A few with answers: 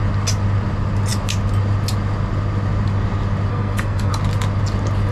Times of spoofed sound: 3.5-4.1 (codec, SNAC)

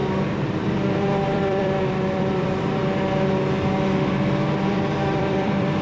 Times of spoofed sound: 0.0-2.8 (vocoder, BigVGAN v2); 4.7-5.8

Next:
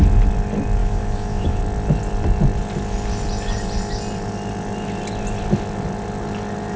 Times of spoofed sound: 0.8-1.6 (autoencoder, DAC-VAE)